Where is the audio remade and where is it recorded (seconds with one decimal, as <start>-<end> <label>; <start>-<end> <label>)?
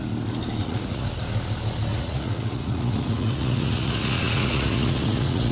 0.0-0.6 recorded; 0.6-1.1 remade; 1.1-1.9 recorded; 1.9-5.5 remade